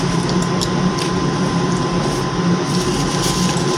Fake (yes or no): yes